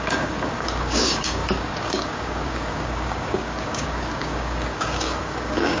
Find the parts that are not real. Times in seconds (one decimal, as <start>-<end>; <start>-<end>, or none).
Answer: 0.0-5.8